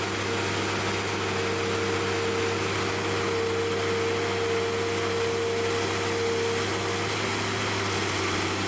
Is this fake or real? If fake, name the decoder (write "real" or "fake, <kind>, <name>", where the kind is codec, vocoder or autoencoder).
real